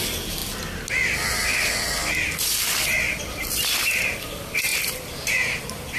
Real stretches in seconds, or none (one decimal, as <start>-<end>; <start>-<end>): 0.4-4.0